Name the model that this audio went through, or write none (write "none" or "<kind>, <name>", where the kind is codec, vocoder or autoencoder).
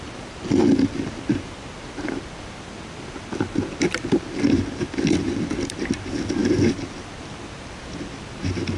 none